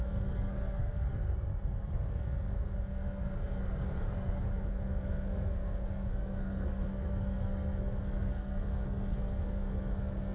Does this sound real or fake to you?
fake